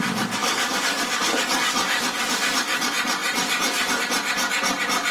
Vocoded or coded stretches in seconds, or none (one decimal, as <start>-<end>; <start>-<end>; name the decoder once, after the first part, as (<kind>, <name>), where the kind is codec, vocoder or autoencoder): 0.4-1.6 (codec, DAC)